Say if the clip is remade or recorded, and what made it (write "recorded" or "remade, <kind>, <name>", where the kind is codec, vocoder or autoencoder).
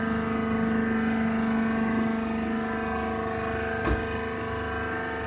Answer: recorded